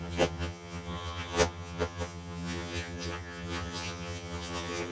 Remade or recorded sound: remade